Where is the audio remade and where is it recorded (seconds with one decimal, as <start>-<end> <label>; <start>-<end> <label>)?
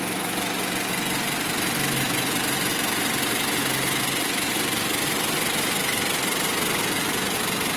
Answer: 0.0-7.8 recorded